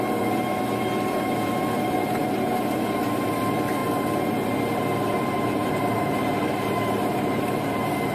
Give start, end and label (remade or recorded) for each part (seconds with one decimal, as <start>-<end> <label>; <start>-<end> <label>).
0.0-2.2 remade; 2.2-3.2 recorded; 3.2-3.8 remade; 3.8-5.7 recorded; 5.7-8.1 remade